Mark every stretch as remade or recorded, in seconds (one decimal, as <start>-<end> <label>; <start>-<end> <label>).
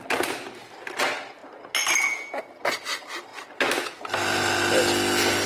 0.0-5.5 recorded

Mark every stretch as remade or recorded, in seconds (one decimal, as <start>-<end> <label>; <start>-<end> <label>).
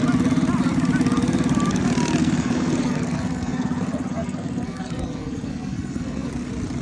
0.0-2.2 recorded; 2.2-6.3 remade; 6.3-6.8 recorded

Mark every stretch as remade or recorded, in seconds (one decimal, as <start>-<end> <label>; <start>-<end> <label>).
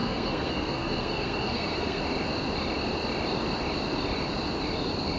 0.0-2.0 remade; 2.0-5.2 recorded